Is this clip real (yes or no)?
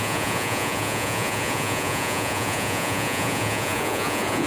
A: no